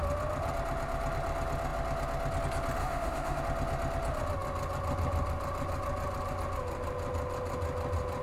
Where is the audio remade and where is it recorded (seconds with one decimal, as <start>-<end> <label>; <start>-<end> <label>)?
0.0-2.8 recorded; 2.8-3.4 remade; 3.4-8.2 recorded